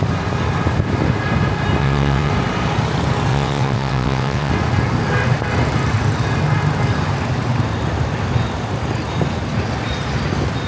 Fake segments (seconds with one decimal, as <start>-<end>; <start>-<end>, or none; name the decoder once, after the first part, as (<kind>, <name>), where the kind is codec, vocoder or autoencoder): 1.8-2.3 (vocoder, WaveNeXt); 3.3-4.5